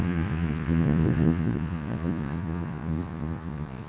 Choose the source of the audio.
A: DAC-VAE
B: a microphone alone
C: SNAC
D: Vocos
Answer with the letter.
D